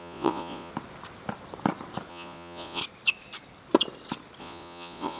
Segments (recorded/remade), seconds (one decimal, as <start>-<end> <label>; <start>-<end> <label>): 0.0-0.7 remade; 0.7-2.1 recorded; 2.1-2.8 remade; 2.8-4.4 recorded; 4.4-5.2 remade